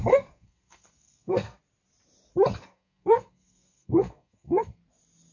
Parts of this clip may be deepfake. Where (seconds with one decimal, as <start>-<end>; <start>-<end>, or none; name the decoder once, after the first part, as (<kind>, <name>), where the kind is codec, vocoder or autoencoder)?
0.0-1.6 (codec, SNAC); 2.6-4.8